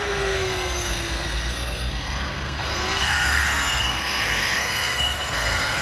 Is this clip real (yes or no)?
no